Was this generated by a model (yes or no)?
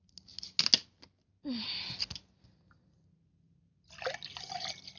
no